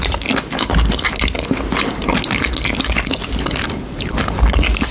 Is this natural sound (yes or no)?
yes